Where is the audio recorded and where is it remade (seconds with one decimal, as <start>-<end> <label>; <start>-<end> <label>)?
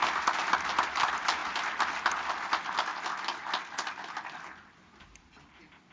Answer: 0.0-5.9 recorded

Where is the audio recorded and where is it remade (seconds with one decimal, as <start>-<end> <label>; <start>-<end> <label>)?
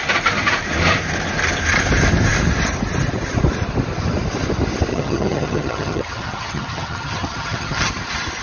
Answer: 0.0-4.9 recorded; 4.9-7.9 remade; 7.9-8.4 recorded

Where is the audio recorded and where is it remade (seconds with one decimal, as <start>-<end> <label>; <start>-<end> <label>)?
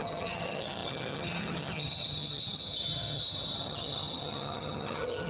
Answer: 0.0-5.3 remade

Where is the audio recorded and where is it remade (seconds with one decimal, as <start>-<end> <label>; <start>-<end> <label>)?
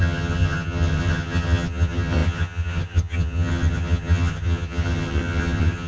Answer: 0.0-5.9 remade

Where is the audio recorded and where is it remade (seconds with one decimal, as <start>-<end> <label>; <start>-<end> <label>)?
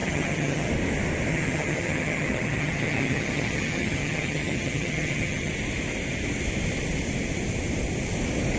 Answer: 0.0-0.7 remade; 0.7-1.3 recorded; 1.3-5.5 remade; 5.5-8.6 recorded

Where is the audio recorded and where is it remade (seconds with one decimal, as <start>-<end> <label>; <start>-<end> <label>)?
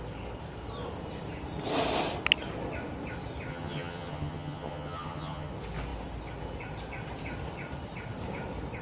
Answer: 0.0-3.5 recorded; 3.5-5.5 remade; 5.5-8.8 recorded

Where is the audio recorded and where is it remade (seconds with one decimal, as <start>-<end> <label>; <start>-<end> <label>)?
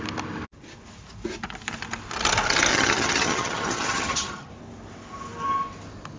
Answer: 0.0-2.7 recorded; 2.7-4.5 remade; 4.5-6.2 recorded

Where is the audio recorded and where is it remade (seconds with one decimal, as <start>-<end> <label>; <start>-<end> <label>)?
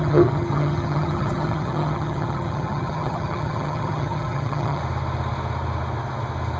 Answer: 0.0-4.8 remade; 4.8-6.6 recorded